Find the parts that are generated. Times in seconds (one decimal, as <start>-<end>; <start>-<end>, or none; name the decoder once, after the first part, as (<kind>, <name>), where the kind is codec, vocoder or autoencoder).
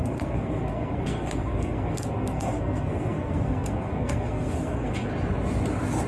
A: 0.0-5.1 (codec, SNAC)